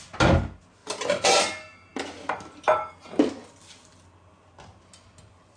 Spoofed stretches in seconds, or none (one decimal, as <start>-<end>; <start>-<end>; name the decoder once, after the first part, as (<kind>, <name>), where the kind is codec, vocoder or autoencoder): none